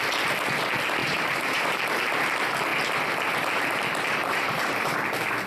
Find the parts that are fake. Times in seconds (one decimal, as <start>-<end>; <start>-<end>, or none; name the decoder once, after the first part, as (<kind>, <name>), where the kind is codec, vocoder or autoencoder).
1.0-1.8 (vocoder, BigVGAN v2); 4.2-4.7

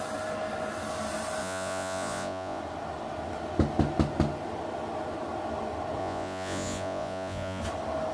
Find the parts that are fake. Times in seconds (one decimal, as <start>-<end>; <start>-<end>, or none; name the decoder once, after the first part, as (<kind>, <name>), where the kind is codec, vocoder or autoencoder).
1.4-2.6 (vocoder, Vocos); 6.0-7.6

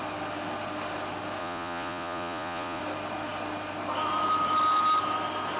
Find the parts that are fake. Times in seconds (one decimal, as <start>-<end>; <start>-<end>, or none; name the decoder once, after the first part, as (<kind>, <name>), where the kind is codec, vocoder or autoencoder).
1.4-2.8 (vocoder, Vocos)

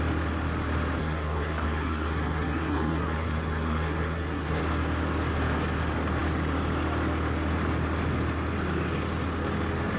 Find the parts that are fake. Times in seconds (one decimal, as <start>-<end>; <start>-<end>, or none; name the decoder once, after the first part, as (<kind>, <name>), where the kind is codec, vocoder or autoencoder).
1.0-4.6 (codec, SNAC)

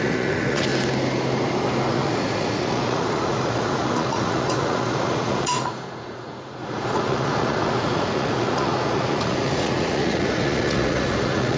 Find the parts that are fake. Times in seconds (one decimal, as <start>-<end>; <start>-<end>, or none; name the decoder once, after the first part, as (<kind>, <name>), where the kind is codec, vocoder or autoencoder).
0.0-0.7 (vocoder, Vocos); 1.9-11.6

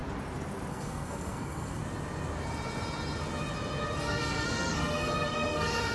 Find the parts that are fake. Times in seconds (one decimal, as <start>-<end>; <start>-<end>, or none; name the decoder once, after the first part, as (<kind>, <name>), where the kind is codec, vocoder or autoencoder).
0.7-1.8 (codec, SNAC); 4.0-5.9

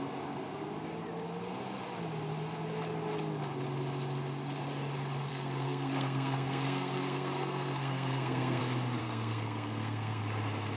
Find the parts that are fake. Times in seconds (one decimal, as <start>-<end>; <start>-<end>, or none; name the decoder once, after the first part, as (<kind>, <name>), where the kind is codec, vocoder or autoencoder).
5.3-8.6 (codec, SNAC); 9.0-10.2